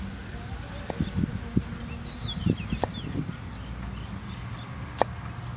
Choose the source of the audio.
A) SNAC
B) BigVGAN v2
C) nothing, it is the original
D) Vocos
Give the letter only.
C